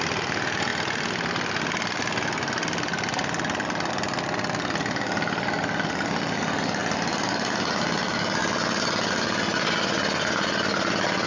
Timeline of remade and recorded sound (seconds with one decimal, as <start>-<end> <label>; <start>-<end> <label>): 0.0-11.3 recorded